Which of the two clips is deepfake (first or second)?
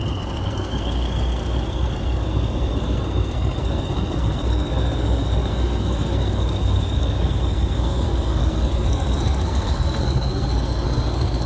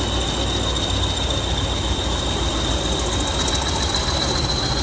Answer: first